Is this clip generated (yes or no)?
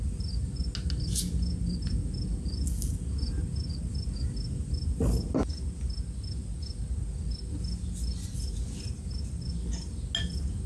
no